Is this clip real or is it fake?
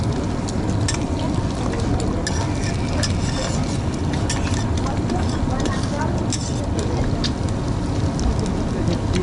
real